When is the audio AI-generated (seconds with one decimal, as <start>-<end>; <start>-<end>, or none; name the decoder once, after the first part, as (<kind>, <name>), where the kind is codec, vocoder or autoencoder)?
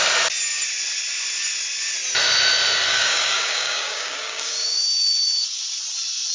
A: 2.9-5.6 (codec, DAC)